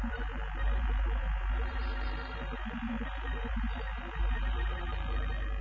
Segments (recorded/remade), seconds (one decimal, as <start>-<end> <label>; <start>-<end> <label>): 0.0-4.9 remade; 4.9-5.6 recorded